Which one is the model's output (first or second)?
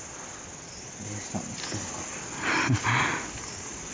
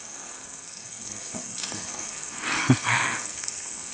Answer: second